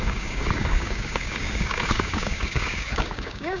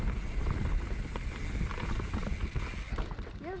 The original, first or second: second